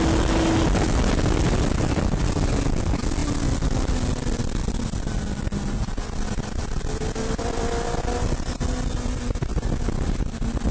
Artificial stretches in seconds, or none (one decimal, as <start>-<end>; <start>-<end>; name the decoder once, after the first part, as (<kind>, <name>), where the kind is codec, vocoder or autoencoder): none